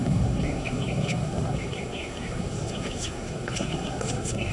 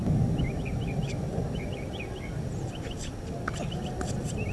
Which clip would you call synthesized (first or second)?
first